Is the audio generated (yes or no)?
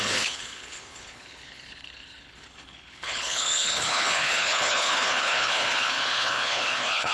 yes